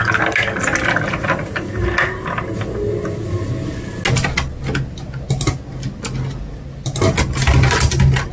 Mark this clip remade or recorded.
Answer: recorded